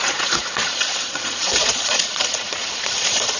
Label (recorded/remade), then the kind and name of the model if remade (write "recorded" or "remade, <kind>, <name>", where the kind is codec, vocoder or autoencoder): remade, vocoder, Vocos